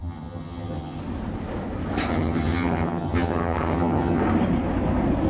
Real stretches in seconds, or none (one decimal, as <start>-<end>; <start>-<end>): 1.0-2.1; 4.2-5.3